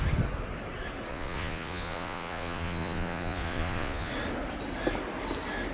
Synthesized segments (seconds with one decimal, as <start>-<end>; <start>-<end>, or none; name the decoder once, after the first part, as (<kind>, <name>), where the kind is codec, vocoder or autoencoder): 1.1-4.1 (vocoder, Vocos)